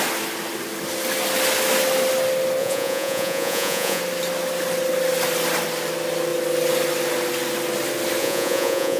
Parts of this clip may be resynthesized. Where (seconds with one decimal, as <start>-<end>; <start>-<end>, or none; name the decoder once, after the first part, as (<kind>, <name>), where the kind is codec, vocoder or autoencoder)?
2.6-4.0 (vocoder, Vocos); 8.2-9.0